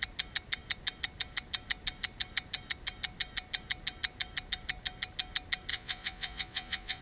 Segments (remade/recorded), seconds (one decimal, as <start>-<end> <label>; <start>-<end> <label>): 0.0-5.7 recorded; 5.7-7.0 remade